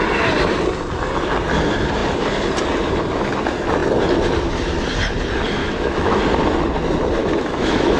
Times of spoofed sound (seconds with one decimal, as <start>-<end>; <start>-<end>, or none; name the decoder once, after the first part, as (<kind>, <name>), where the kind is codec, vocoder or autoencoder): 5.6-6.2 (autoencoder, DAC-VAE); 7.2-8.0